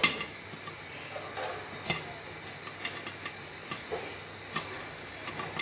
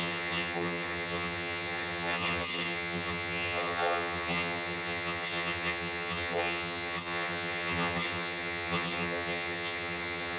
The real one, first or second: first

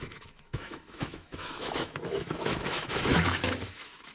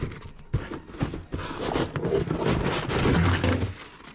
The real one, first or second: second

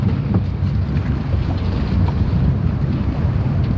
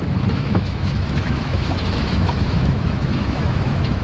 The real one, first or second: first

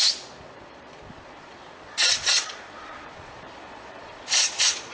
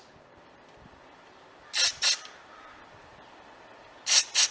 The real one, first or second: second